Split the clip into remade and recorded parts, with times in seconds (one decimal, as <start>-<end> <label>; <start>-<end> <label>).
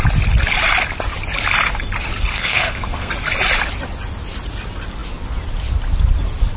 0.0-2.3 recorded; 2.3-3.1 remade; 3.1-6.6 recorded